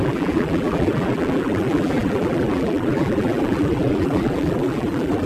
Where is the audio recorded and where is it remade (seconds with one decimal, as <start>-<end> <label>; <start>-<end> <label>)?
0.0-5.3 remade